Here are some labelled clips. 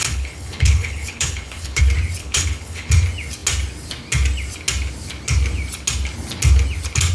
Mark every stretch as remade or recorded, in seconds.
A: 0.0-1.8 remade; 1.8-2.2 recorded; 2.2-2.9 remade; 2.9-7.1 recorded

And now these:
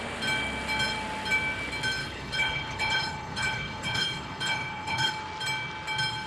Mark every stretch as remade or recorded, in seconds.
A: 0.0-2.0 recorded; 2.0-5.1 remade; 5.1-6.3 recorded

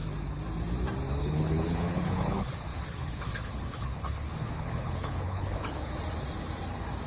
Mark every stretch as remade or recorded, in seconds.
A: 0.0-1.1 recorded; 1.1-5.9 remade; 5.9-7.1 recorded

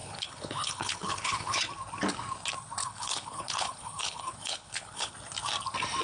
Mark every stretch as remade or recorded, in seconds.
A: 0.0-1.6 remade; 1.6-2.8 recorded; 2.8-5.1 remade; 5.1-6.0 recorded